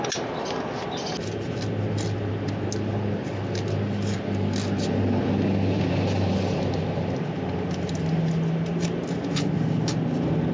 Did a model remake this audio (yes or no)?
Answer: no